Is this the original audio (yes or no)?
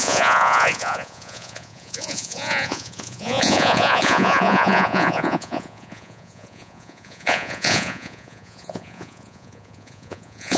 no